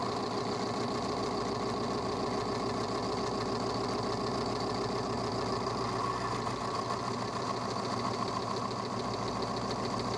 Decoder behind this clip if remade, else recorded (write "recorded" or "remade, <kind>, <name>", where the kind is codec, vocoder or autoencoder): recorded